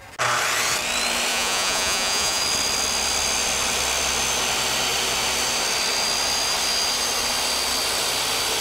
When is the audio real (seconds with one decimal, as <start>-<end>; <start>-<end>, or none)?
0.0-1.3; 2.4-8.6